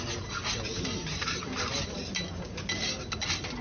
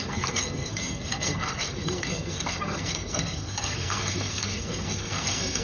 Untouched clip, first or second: first